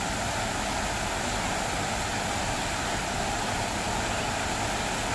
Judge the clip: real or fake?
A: real